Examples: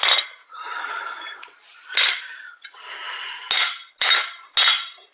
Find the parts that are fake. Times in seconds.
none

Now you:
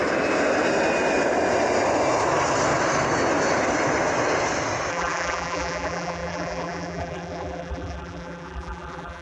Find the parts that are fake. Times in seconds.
4.9-9.2

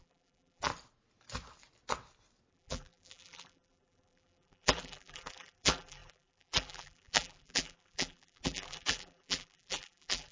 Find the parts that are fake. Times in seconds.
0.0-0.7; 2.5-10.3

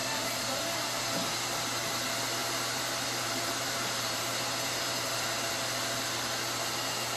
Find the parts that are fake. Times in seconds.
0.0-0.6; 2.4-5.5

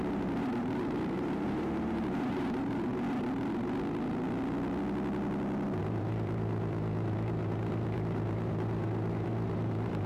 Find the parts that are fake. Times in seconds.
0.0-2.9; 5.8-10.1